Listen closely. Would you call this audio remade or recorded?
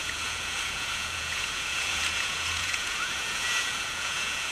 remade